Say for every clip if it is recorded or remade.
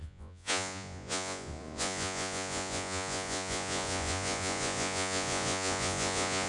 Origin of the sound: remade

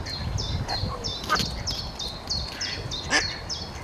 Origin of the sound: recorded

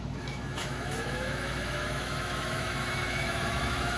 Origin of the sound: remade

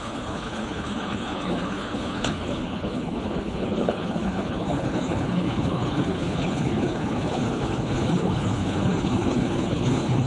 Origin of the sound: remade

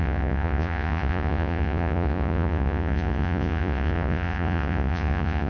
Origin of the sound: remade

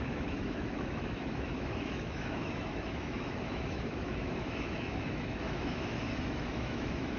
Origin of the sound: remade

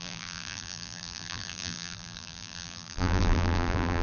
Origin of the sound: remade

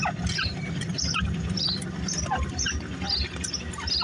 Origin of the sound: recorded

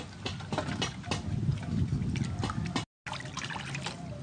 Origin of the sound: recorded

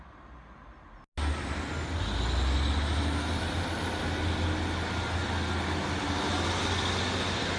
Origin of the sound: recorded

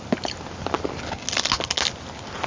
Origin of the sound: recorded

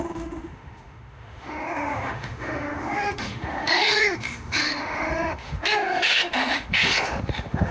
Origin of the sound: remade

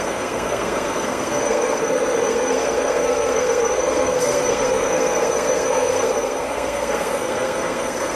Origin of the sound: remade